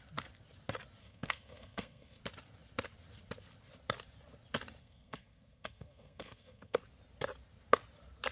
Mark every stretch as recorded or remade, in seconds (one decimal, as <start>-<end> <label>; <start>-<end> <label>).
0.0-1.0 recorded; 1.0-2.2 remade; 2.2-4.8 recorded; 4.8-6.8 remade; 6.8-8.3 recorded